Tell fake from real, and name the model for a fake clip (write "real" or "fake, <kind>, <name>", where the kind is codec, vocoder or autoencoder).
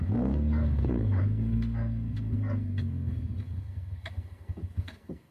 fake, codec, SNAC